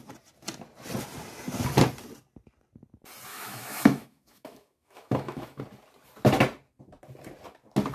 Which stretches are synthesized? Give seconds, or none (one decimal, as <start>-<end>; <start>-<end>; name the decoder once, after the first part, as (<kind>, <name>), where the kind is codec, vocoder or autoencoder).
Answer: 3.3-5.6 (autoencoder, DAC-VAE)